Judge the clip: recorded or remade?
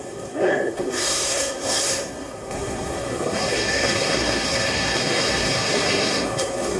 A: remade